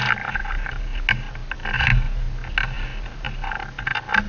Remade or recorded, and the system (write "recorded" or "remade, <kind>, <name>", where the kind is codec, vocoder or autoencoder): recorded